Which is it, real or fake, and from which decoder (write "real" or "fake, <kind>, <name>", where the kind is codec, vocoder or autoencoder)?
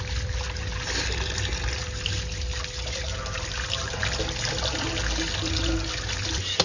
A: real